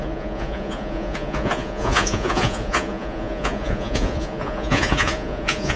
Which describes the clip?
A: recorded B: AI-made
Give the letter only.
B